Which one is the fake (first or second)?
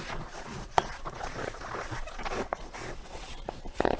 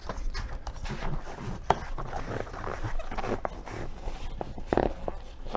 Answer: first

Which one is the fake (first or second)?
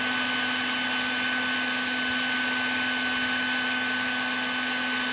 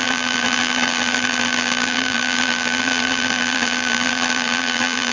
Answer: second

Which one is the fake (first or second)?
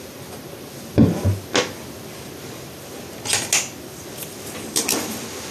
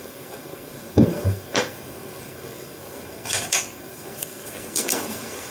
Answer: second